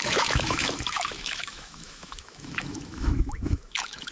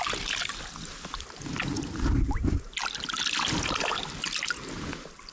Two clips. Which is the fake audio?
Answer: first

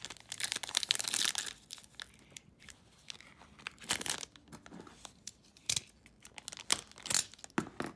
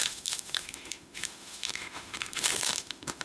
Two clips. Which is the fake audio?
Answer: second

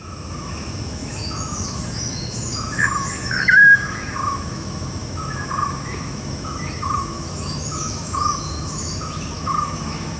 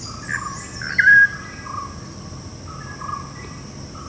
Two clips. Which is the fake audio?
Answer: first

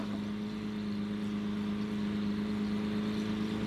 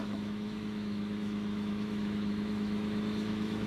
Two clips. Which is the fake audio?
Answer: second